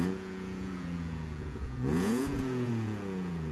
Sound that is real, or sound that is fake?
fake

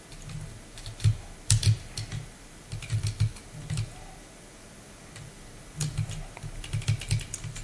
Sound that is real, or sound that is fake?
real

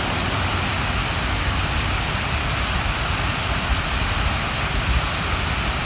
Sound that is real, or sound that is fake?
real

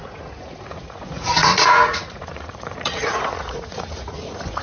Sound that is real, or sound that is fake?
fake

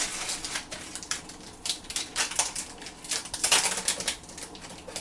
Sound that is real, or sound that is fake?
real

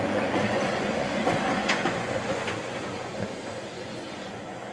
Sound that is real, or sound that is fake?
fake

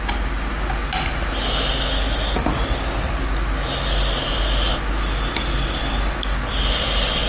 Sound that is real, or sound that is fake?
real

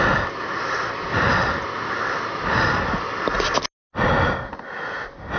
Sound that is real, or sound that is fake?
real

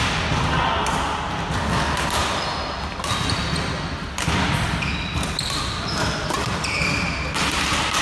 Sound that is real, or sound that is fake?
real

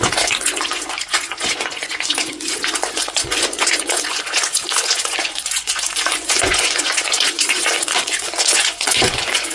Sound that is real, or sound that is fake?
fake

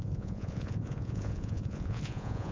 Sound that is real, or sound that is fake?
fake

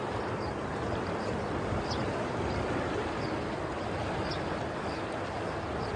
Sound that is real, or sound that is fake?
real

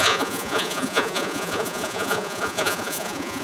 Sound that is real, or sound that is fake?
fake